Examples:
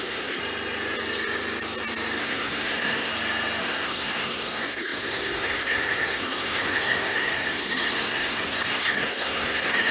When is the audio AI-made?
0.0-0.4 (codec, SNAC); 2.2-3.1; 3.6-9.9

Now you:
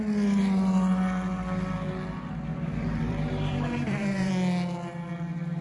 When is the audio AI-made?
2.5-4.3 (vocoder, BigVGAN v2)